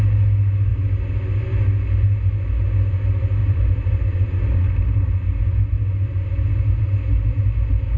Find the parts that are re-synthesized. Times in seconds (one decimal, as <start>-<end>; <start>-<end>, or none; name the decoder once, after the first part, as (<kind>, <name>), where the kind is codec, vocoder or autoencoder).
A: 3.4-4.4 (vocoder, BigVGAN v2)